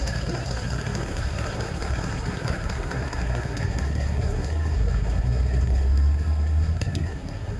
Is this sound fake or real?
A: fake